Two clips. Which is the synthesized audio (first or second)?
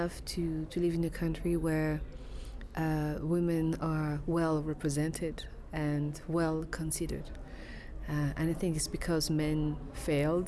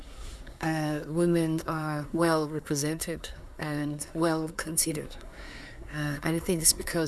second